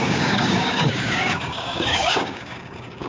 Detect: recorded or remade remade